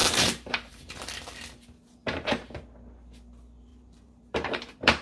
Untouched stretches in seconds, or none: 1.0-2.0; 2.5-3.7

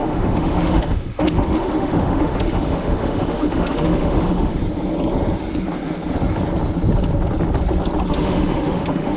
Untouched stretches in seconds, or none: 4.6-8.1

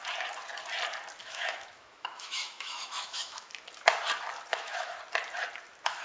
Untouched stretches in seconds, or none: 0.0-1.2; 3.5-4.5; 5.0-6.0

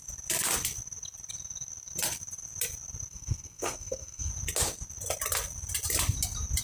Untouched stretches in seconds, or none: 0.0-3.1; 4.3-6.6

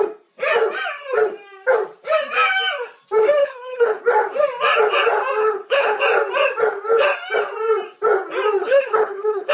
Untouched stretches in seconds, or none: 0.0-3.4; 4.0-5.4; 6.0-8.6

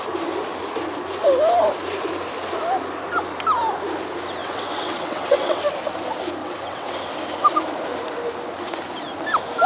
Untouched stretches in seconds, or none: 0.0-4.4; 5.6-6.4; 7.1-9.7